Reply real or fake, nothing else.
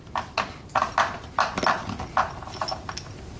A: real